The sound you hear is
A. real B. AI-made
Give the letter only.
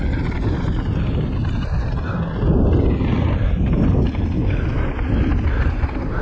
A